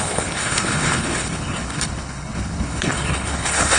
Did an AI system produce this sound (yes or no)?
yes